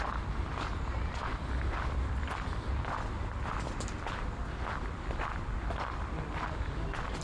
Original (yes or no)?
no